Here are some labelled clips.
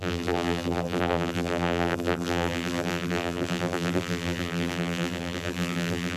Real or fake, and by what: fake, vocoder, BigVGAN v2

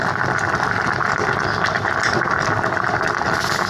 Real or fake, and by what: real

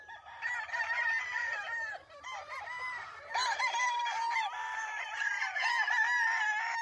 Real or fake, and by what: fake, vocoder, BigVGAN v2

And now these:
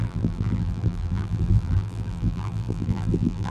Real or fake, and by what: fake, vocoder, BigVGAN v2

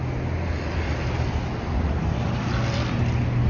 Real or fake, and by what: real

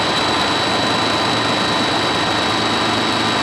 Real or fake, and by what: real